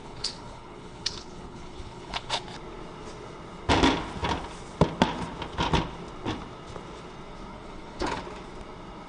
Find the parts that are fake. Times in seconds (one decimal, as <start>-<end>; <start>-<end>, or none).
0.0-2.4; 7.5-8.2